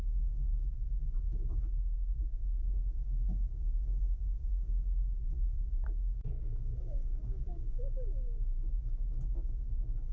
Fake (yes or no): yes